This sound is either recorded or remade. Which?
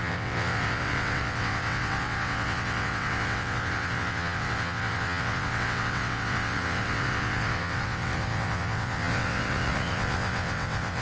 remade